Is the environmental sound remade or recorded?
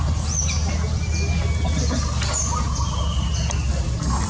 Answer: recorded